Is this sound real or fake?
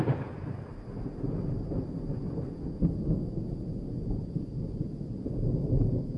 real